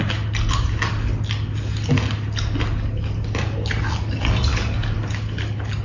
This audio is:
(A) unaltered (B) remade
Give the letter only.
A